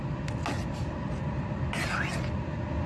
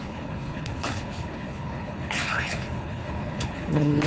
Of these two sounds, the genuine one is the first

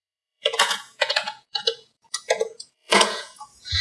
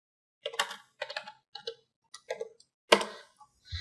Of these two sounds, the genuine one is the second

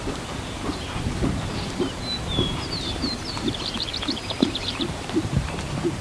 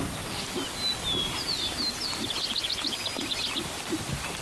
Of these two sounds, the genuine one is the second